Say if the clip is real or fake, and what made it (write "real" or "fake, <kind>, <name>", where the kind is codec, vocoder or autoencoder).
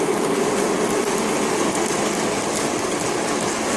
real